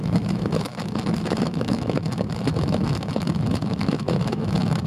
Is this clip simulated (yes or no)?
yes